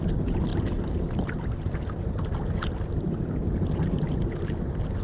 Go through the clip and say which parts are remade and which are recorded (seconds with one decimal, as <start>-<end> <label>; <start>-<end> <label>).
0.0-5.0 recorded